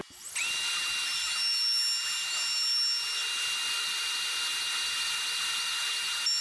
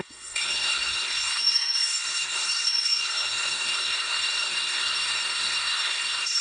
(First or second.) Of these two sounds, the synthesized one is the second